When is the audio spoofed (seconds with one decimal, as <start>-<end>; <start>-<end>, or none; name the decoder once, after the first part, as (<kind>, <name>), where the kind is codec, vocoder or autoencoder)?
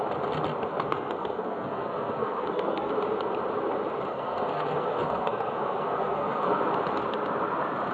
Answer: 0.7-2.9 (codec, SNAC); 4.1-6.6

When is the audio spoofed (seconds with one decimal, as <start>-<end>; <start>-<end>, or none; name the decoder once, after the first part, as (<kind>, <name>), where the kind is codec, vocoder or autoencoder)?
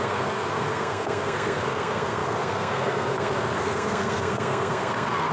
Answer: 0.0-5.3 (codec, SNAC)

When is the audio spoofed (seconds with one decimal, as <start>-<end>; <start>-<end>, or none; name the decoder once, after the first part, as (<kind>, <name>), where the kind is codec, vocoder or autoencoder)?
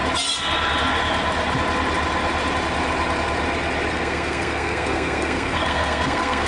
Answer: 3.9-6.5 (codec, SNAC)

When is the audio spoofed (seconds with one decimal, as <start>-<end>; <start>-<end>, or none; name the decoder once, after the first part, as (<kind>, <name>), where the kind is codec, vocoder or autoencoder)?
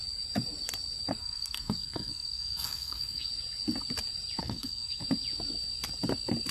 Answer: 1.2-3.3 (codec, SNAC); 4.4-5.0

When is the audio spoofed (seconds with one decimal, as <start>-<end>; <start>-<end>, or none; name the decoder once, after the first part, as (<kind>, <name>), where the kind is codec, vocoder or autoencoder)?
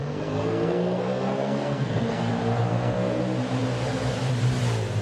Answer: 0.0-2.3 (codec, SNAC); 2.7-3.2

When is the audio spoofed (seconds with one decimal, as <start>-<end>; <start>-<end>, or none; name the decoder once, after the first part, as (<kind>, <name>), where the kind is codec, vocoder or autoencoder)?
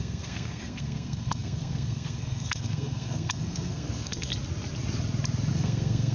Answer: 0.0-4.3 (codec, SNAC); 5.5-6.1